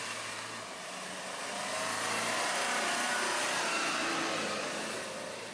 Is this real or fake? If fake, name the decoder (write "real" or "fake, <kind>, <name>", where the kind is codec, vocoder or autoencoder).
real